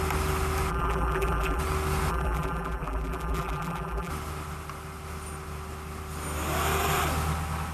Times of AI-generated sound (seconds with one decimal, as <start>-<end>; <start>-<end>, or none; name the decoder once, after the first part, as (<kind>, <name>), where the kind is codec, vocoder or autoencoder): 0.7-1.6 (vocoder, BigVGAN v2); 2.1-4.1